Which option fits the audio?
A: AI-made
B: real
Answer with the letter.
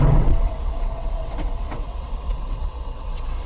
A